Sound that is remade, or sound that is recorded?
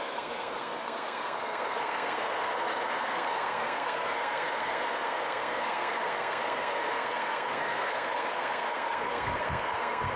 remade